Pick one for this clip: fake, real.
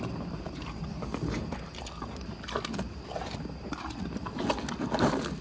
real